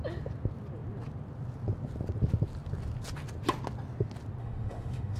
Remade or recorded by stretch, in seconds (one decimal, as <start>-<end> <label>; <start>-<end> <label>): 0.0-4.4 recorded; 4.4-5.2 remade